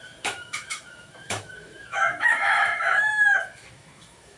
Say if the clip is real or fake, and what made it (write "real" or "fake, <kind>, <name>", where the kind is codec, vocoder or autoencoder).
fake, autoencoder, DAC-VAE